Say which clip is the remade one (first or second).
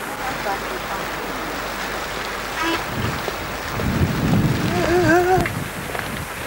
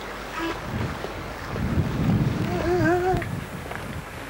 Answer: second